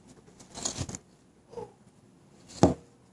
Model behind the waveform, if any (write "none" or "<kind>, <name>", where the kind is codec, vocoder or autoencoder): none